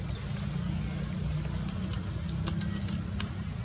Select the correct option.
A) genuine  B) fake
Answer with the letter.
A